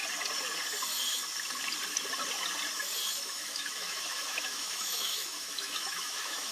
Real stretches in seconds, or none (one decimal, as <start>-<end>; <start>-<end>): 0.0-3.1